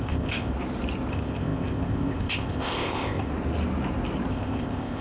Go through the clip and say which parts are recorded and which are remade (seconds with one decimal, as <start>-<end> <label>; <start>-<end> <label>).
0.0-0.5 remade; 0.5-1.1 recorded; 1.1-3.3 remade; 3.3-4.3 recorded; 4.3-5.0 remade